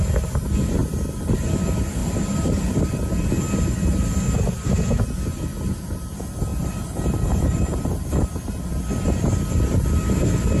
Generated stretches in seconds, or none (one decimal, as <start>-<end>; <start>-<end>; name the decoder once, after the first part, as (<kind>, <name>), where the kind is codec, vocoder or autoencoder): 2.0-3.3 (vocoder, BigVGAN v2); 6.5-8.3